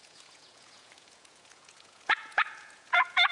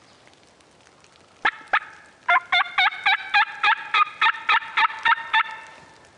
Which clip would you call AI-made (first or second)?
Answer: first